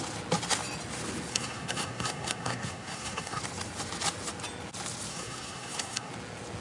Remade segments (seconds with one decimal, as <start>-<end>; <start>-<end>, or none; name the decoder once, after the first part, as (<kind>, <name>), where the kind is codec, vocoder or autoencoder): 1.3-3.4 (codec, SNAC); 5.1-6.1